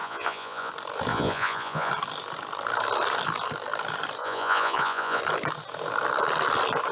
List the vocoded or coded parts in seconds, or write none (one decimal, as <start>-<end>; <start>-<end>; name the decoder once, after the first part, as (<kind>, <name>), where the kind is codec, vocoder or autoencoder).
0.0-0.7 (vocoder, Vocos); 1.1-1.9; 4.2-5.2